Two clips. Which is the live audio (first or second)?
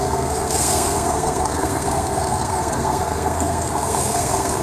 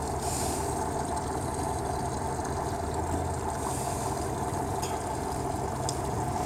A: second